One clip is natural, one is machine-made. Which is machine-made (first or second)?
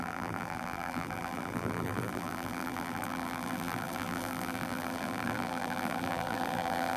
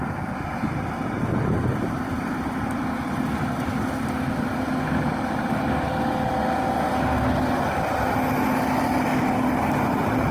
first